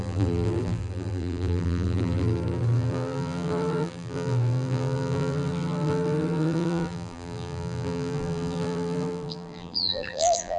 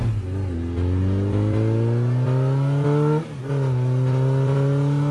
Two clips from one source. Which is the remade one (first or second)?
first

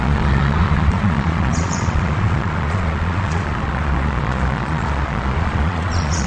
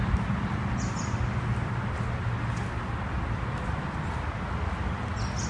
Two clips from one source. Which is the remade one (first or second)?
first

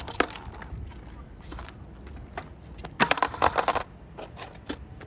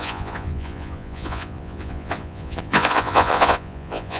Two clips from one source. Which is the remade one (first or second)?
second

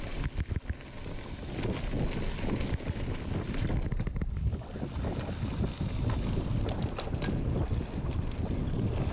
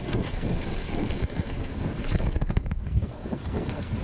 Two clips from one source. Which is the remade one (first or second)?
second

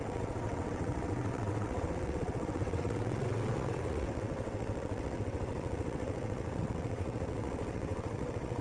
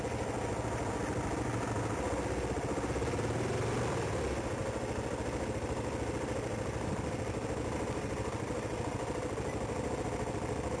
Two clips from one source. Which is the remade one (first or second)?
first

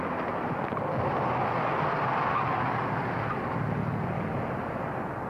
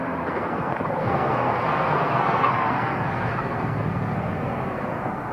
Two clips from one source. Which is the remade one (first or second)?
second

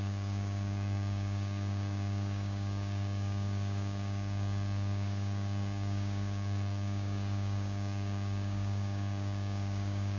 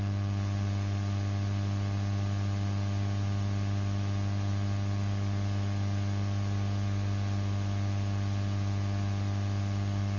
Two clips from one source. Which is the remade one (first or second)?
first